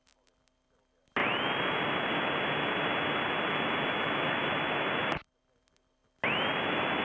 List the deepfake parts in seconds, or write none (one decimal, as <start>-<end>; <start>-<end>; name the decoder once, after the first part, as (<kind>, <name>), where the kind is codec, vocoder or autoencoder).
none